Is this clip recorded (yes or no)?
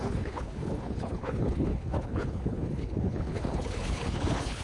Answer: no